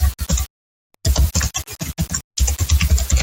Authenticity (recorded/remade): recorded